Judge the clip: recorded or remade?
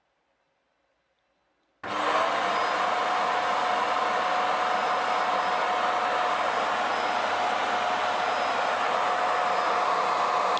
recorded